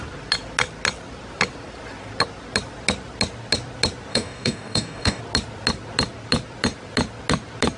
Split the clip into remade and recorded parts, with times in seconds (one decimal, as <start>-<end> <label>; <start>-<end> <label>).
0.0-4.1 recorded; 4.1-5.2 remade; 5.2-7.8 recorded